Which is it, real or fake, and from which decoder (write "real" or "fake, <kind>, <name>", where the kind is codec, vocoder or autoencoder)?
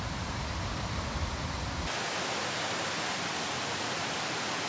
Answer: real